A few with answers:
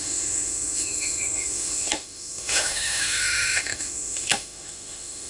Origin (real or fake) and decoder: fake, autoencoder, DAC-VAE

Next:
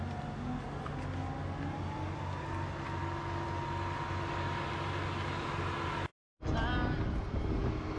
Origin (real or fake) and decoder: real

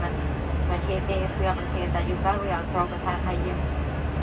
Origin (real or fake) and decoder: real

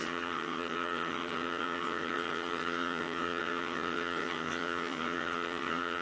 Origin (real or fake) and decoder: fake, vocoder, HiFi-GAN